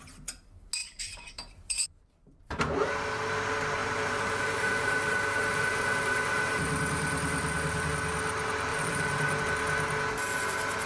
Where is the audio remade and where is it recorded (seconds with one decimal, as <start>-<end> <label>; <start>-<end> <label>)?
0.0-0.8 recorded; 0.8-2.6 remade; 2.6-3.8 recorded; 3.8-7.9 remade; 7.9-8.7 recorded; 8.7-9.4 remade; 9.4-10.9 recorded